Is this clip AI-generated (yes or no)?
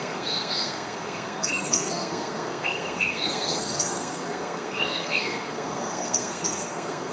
yes